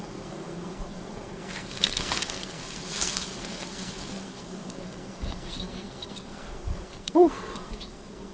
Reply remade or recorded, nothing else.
remade